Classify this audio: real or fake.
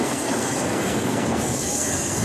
fake